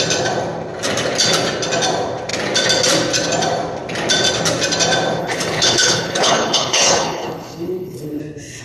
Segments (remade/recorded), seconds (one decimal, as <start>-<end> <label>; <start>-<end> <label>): 0.0-5.2 recorded; 5.2-8.2 remade; 8.2-8.6 recorded